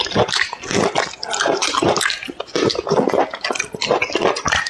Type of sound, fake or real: real